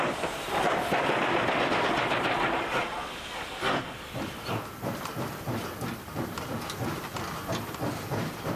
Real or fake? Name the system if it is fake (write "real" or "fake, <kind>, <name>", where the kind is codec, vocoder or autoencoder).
real